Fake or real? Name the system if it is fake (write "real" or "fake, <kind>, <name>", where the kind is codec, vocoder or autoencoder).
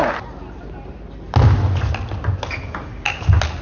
real